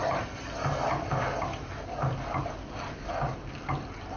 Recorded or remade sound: recorded